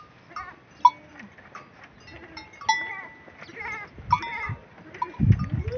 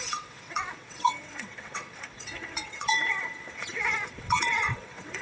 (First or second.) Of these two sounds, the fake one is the second